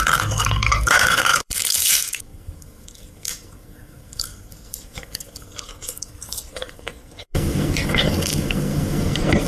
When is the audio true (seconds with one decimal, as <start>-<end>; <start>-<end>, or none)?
none